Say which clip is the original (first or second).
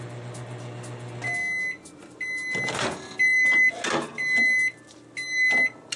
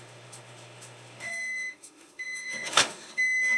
first